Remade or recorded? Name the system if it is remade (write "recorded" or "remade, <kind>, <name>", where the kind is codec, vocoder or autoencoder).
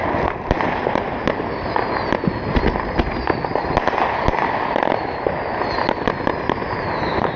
recorded